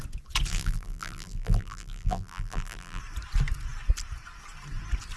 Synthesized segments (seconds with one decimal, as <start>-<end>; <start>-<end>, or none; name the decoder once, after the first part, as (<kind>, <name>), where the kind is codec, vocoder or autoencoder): 0.5-3.0 (vocoder, BigVGAN v2)

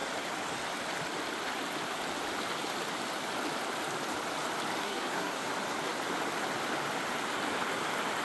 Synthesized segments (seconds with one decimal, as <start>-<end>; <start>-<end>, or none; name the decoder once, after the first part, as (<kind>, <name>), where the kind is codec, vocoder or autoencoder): 4.8-5.5 (codec, SNAC)

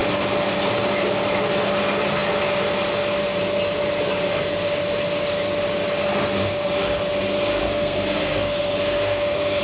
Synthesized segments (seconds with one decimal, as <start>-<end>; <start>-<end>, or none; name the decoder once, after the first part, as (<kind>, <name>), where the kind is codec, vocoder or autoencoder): 7.6-9.6 (codec, SNAC)

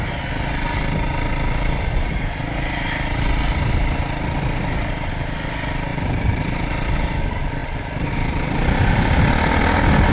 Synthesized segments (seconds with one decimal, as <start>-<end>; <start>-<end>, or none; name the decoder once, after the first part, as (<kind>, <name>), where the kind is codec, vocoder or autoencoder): 5.9-6.7 (vocoder, BigVGAN v2)

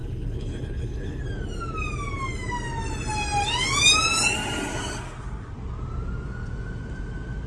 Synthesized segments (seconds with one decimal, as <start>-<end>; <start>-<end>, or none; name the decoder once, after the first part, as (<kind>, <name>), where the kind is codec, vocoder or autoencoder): 0.0-1.2 (codec, HILCodec)

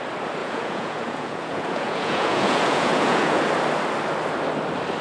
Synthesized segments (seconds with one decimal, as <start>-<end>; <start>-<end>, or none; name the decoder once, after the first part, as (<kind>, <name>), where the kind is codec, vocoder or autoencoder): 0.4-3.4 (vocoder, Vocos)